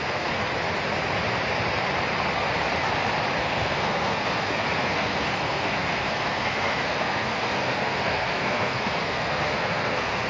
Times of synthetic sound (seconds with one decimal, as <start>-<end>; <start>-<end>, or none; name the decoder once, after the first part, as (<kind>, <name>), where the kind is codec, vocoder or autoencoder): 0.0-0.4 (codec, SNAC); 3.4-10.3